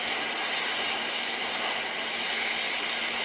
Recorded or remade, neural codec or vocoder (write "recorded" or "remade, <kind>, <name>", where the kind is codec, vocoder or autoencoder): recorded